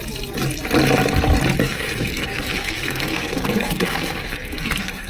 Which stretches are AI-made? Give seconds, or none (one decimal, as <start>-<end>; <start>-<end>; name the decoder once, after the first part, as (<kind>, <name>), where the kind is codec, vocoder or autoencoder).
1.6-5.1 (codec, SNAC)